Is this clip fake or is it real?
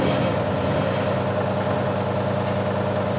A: real